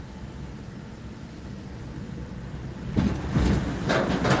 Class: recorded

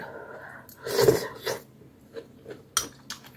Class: recorded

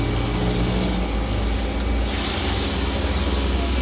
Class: recorded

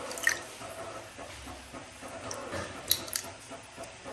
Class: recorded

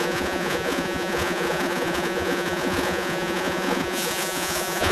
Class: remade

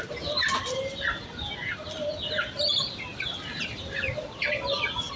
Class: recorded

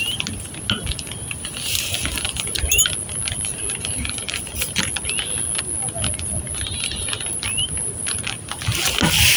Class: recorded